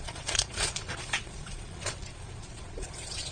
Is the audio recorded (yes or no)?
no